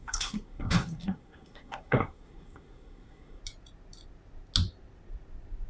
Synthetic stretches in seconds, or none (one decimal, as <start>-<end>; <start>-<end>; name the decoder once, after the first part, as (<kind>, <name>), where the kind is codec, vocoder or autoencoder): 0.0-3.4 (codec, SNAC)